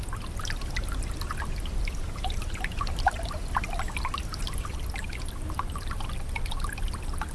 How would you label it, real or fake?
real